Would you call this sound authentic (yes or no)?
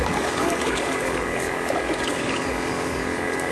no